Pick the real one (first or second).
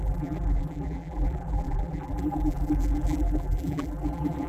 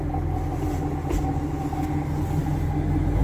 second